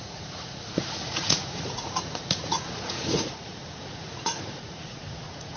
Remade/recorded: remade